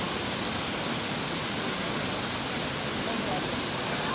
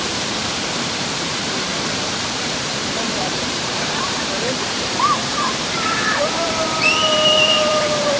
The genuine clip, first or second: first